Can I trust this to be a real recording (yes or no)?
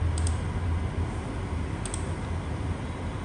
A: yes